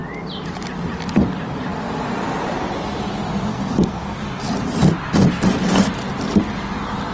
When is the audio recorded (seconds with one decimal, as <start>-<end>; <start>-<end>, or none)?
0.0-3.5; 4.2-7.1